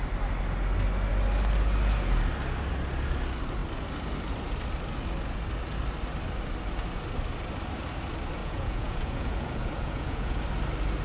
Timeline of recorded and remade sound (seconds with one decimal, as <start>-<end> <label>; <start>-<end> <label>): 0.0-8.4 recorded; 8.4-10.4 remade; 10.4-11.0 recorded